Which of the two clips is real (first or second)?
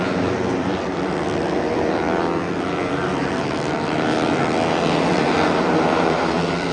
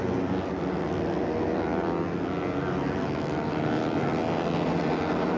second